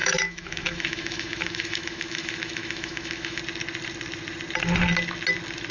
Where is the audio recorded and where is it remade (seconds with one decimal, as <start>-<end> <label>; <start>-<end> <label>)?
0.0-3.4 remade; 3.4-5.7 recorded